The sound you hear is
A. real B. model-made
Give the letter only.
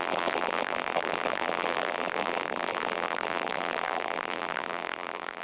B